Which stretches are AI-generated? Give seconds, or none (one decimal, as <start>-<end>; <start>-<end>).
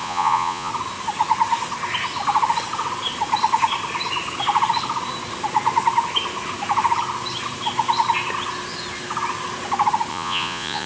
0.0-0.7; 10.1-10.9